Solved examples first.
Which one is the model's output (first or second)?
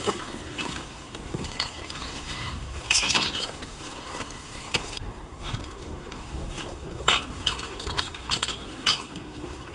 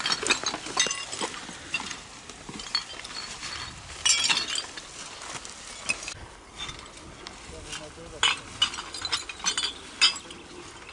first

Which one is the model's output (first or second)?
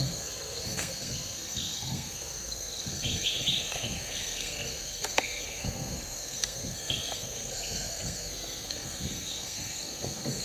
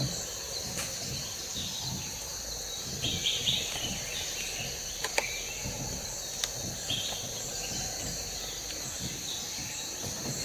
first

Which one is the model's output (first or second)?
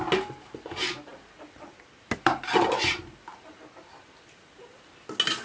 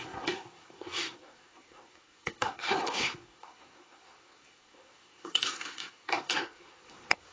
second